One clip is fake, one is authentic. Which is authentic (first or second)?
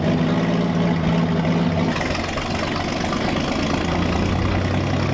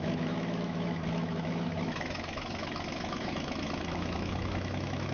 first